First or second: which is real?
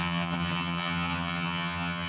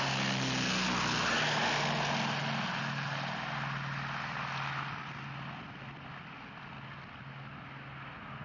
second